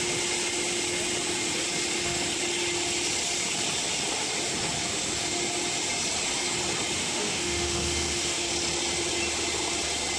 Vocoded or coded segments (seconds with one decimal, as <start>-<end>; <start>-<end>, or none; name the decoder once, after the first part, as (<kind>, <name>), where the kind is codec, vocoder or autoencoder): 7.0-8.5 (autoencoder, DAC-VAE)